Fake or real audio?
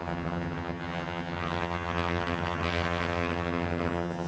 fake